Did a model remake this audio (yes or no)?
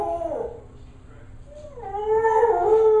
no